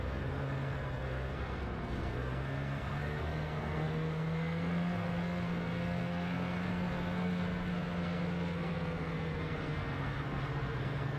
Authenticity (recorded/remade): remade